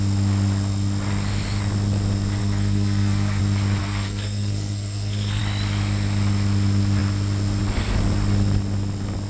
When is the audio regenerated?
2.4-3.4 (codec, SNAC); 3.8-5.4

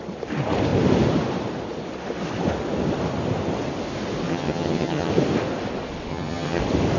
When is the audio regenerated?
4.3-5.1 (vocoder, HiFi-GAN); 6.1-6.6

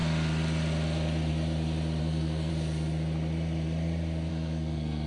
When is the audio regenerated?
2.0-2.5 (codec, SNAC); 4.3-5.1

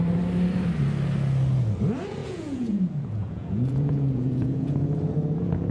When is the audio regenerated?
2.2-5.7 (vocoder, Vocos)